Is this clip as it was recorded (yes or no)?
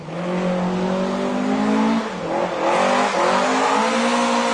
yes